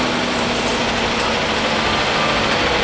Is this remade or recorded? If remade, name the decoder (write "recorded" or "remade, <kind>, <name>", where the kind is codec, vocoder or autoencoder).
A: recorded